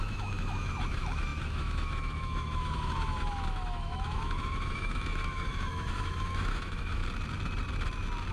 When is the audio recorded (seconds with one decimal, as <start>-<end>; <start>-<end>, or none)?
7.0-8.3